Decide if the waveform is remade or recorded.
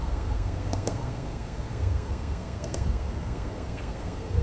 remade